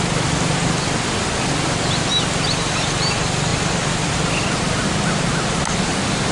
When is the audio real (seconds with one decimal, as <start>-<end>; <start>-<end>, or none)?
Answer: 0.0-6.3